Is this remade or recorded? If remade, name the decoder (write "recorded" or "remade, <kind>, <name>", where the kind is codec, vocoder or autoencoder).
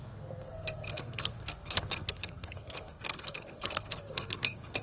remade, codec, SNAC